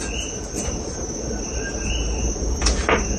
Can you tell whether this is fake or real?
real